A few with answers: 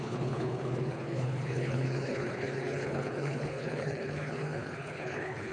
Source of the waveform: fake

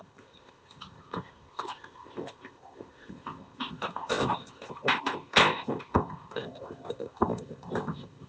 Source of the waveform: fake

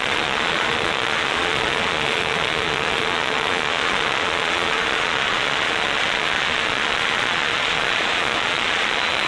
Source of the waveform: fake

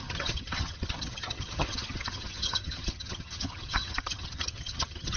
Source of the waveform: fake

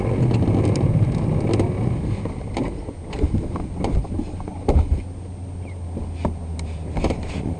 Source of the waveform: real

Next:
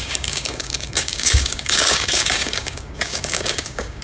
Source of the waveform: fake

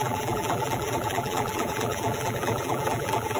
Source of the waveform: fake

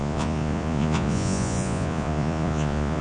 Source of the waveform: fake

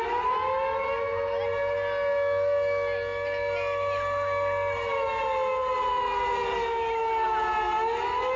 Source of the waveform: real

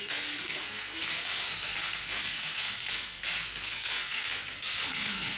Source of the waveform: fake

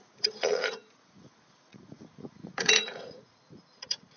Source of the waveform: fake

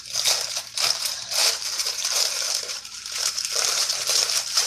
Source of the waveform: fake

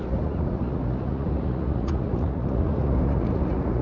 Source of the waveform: fake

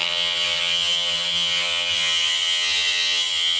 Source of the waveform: fake